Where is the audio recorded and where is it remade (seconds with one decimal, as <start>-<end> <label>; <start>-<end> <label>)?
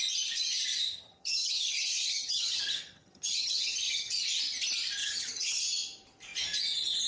0.0-0.8 recorded; 0.8-4.1 remade; 4.1-5.0 recorded; 5.0-5.6 remade; 5.6-7.1 recorded